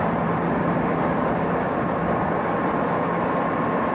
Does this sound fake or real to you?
real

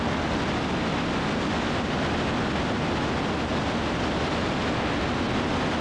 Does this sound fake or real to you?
real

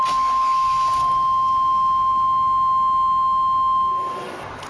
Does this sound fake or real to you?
real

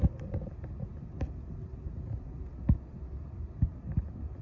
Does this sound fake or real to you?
real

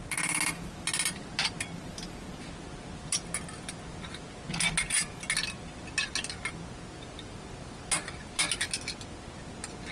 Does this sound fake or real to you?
real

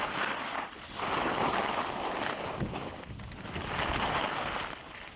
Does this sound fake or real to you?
real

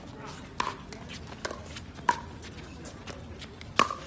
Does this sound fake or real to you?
real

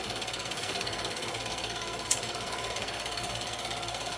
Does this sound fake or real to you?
fake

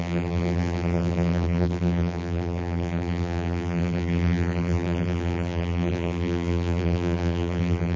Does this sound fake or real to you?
fake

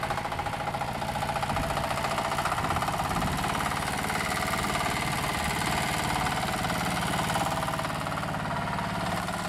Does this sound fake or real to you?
real